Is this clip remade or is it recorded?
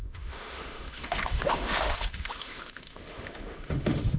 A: remade